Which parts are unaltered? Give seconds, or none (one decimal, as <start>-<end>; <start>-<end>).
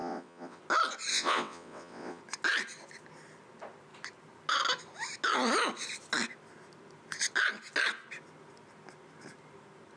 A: 0.6-1.1; 2.2-10.0